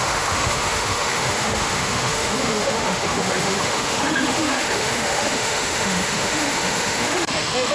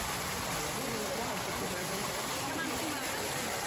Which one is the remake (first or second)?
first